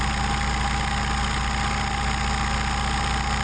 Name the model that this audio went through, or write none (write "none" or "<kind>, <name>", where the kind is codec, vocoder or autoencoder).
none